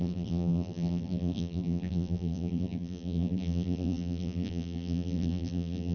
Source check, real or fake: fake